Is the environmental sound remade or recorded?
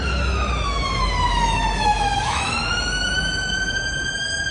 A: remade